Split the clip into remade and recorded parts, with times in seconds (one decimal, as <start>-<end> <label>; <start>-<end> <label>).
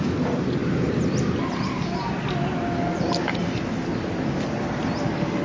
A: 0.0-5.4 recorded